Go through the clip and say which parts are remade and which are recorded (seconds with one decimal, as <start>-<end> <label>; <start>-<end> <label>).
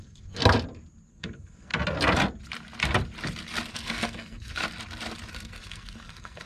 0.0-0.4 remade; 0.4-1.1 recorded; 1.1-1.7 remade; 1.7-3.7 recorded; 3.7-4.6 remade; 4.6-5.3 recorded; 5.3-6.5 remade